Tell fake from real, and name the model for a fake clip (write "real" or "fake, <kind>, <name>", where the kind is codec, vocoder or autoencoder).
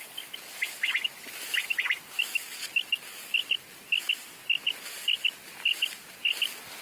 real